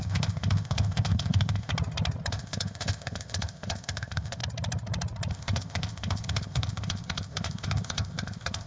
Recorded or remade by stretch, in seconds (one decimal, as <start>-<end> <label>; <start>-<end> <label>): 0.0-1.7 remade; 1.7-2.3 recorded; 2.3-4.4 remade; 4.4-5.3 recorded; 5.3-8.7 remade